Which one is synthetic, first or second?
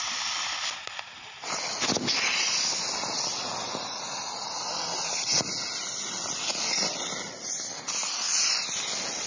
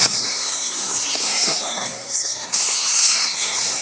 second